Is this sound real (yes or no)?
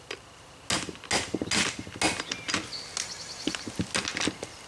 yes